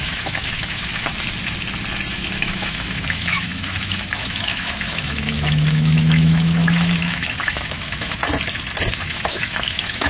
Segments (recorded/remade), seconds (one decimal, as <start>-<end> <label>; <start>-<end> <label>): 0.0-1.1 remade; 1.1-2.1 recorded; 2.1-8.2 remade; 8.2-8.9 recorded; 8.9-10.1 remade